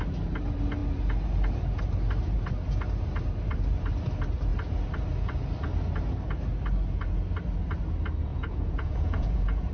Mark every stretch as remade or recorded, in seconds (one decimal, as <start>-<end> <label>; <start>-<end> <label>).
0.0-8.3 recorded; 8.3-9.7 remade